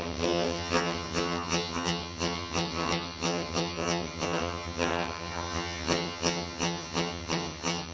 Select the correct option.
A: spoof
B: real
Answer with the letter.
A